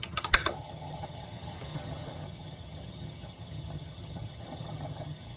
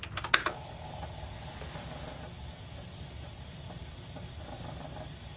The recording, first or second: second